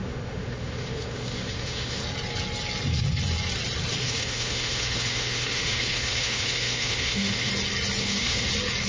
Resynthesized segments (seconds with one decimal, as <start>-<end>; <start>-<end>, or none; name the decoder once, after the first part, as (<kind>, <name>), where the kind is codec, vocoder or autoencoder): 0.0-2.0 (autoencoder, DAC-VAE); 4.0-7.5; 8.0-8.5